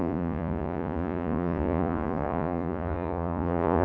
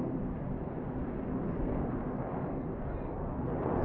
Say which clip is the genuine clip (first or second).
second